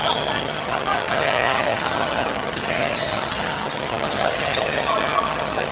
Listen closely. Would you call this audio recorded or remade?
remade